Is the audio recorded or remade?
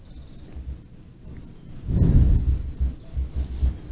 recorded